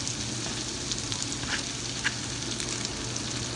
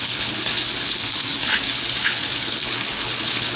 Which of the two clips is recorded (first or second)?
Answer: first